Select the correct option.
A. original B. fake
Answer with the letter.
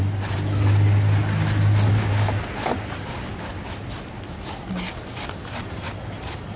A